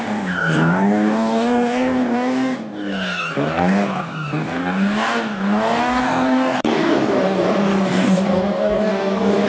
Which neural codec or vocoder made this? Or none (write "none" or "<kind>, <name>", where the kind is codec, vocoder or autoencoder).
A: codec, DAC